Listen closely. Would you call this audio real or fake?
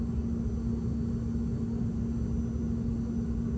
real